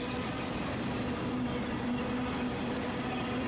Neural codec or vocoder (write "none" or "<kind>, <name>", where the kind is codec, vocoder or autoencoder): none